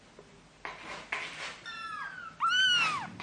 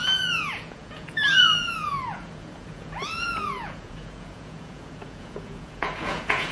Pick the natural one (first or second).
first